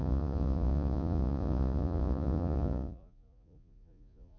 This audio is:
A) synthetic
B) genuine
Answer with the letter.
A